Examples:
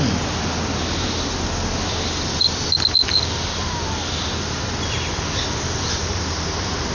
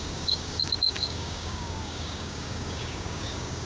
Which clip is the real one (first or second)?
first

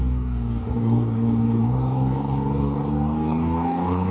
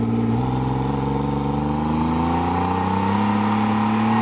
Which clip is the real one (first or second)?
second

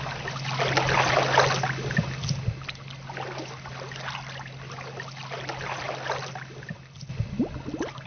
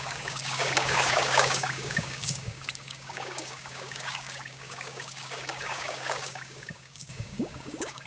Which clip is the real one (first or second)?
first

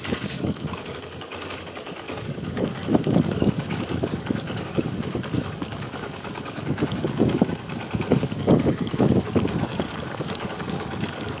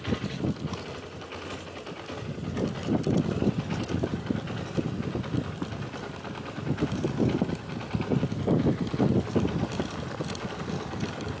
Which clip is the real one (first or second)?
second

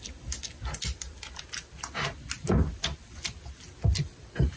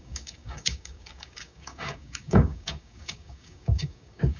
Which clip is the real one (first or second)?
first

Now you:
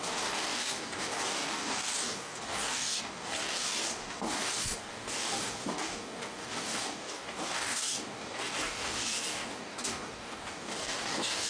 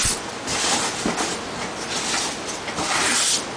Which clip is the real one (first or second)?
second